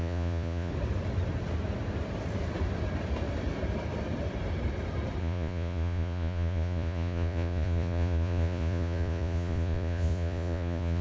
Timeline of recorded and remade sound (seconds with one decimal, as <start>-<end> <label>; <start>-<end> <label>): 0.0-0.7 remade; 0.7-5.2 recorded; 5.2-11.0 remade